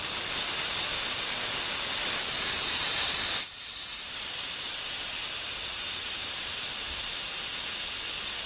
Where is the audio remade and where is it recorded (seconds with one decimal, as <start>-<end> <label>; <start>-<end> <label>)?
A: 0.0-2.0 recorded; 2.0-5.2 remade; 5.2-8.5 recorded